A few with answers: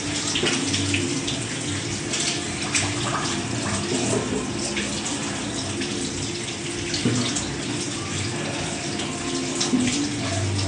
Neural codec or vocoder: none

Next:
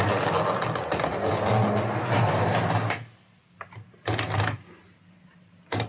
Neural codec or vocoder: none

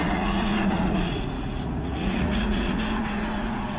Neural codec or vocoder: vocoder, Vocos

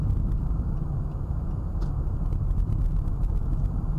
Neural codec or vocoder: none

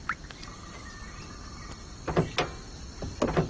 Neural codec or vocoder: none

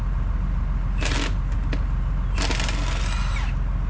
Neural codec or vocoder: none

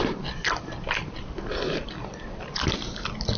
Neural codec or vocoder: none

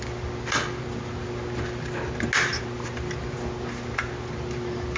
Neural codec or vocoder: none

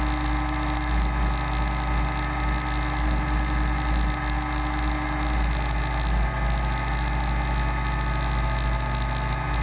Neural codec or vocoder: none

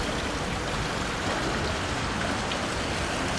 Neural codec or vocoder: none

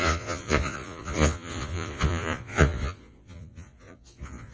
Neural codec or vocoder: vocoder, Vocos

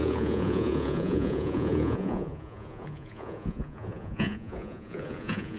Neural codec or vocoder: vocoder, Vocos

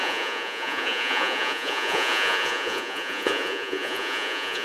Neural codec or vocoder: vocoder, Vocos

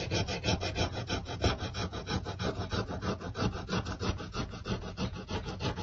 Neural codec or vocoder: vocoder, Vocos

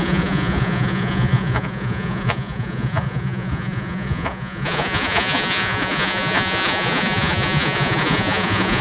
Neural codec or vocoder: vocoder, Vocos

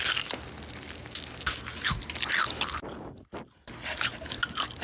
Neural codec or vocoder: none